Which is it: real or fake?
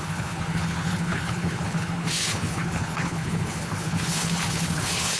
fake